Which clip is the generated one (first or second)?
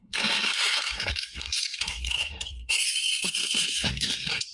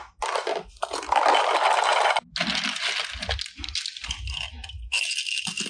first